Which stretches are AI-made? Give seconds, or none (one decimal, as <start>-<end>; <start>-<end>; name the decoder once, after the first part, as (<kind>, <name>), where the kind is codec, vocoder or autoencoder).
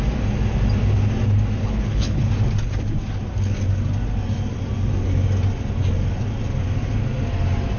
1.6-2.3 (codec, HILCodec)